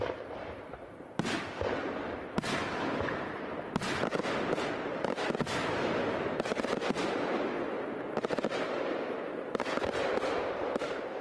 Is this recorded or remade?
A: recorded